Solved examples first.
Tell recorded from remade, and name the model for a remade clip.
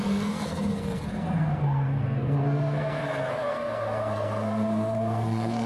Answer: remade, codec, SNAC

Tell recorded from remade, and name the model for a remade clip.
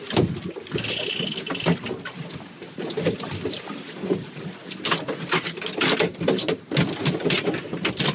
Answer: recorded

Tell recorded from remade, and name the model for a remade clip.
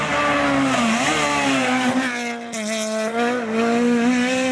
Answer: recorded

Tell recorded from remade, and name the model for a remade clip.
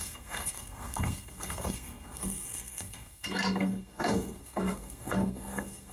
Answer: remade, codec, SNAC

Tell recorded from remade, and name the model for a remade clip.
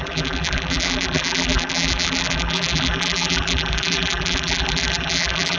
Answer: remade, vocoder, BigVGAN v2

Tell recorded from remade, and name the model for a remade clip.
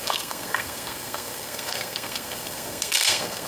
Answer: remade, codec, SNAC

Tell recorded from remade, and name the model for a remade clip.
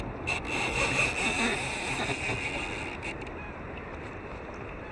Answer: recorded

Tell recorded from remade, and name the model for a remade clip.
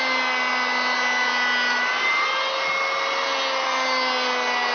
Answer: recorded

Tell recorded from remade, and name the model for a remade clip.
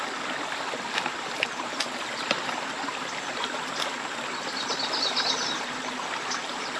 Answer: recorded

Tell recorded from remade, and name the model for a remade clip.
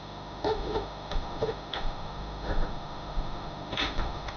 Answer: remade, autoencoder, DAC-VAE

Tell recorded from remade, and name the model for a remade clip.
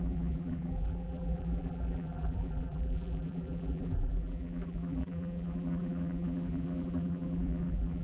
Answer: remade, vocoder, BigVGAN v2